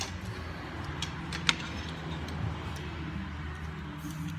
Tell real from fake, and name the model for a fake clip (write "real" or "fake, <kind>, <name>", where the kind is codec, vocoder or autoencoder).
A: real